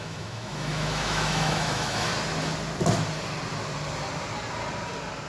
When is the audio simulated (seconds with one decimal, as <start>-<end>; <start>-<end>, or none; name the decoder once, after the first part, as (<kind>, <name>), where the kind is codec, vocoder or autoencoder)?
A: 0.0-2.1 (autoencoder, DAC-VAE)